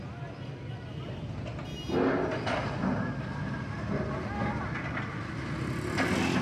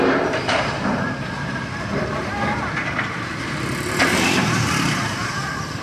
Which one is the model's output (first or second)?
second